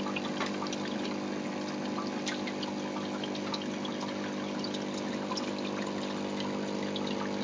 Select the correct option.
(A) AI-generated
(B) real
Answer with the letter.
B